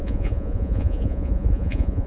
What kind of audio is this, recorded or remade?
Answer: remade